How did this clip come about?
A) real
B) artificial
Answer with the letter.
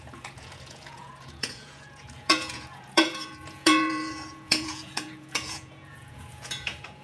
B